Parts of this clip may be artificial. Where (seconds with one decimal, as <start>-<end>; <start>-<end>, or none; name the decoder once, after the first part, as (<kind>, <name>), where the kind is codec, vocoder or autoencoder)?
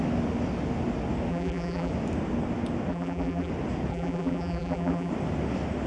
1.3-1.9 (vocoder, BigVGAN v2); 2.9-3.5; 3.9-5.1